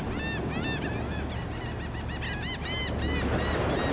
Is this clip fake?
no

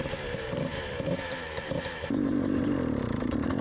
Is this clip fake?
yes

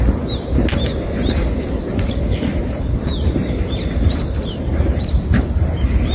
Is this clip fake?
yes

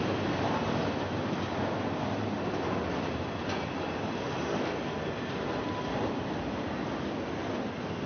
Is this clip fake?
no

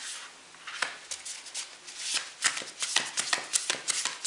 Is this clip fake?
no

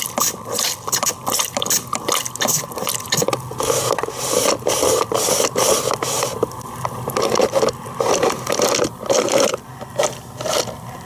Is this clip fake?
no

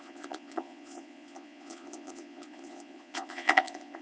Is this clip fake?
yes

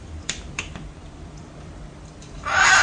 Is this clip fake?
yes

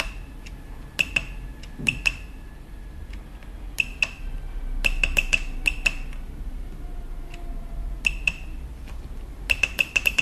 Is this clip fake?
no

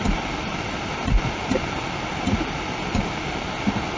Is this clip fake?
no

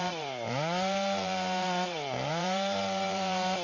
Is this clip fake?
yes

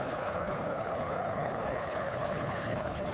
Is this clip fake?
yes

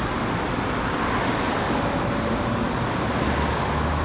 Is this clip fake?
no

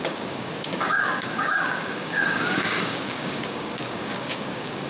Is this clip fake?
yes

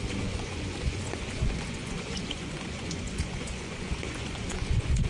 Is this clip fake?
yes